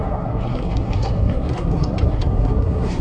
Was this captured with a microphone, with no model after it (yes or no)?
no